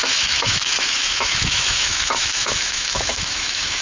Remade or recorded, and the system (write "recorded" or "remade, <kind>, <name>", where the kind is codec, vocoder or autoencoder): remade, autoencoder, DAC-VAE